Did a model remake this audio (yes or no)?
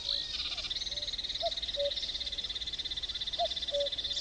no